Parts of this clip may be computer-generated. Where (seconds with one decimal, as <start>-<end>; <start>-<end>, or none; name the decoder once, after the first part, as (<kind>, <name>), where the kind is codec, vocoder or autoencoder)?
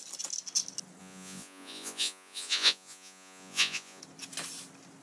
1.0-4.0 (vocoder, Vocos)